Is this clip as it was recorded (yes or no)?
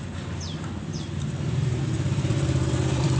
no